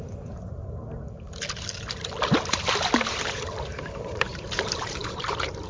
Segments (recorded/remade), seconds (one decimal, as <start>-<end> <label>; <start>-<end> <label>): 0.0-0.6 remade; 0.6-2.9 recorded; 2.9-5.7 remade